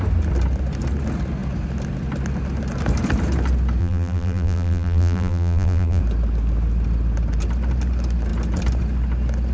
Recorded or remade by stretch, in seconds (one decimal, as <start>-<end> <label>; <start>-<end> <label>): 0.0-3.8 recorded; 3.8-6.0 remade; 6.0-9.5 recorded